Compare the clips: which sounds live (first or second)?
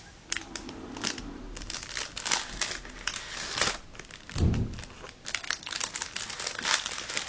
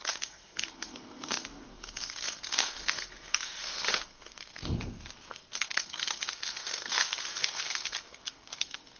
first